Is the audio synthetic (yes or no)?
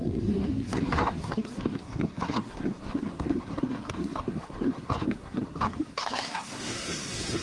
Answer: yes